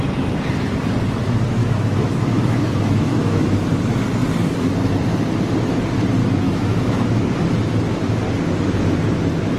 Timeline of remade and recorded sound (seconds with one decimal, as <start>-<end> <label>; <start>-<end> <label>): 0.0-1.6 recorded; 1.6-3.4 remade; 3.4-6.2 recorded; 6.2-7.2 remade; 7.2-9.6 recorded